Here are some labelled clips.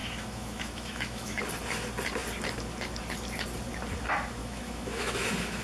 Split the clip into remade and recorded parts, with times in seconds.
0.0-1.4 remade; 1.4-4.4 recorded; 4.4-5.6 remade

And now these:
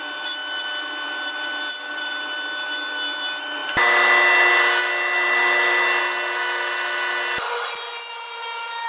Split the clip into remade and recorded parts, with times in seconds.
0.0-8.9 recorded

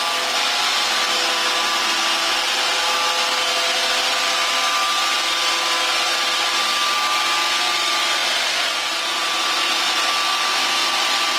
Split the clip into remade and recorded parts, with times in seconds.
0.0-11.4 recorded

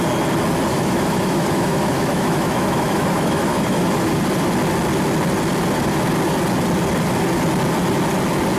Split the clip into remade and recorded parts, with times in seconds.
0.0-0.7 recorded; 0.7-4.2 remade; 4.2-8.6 recorded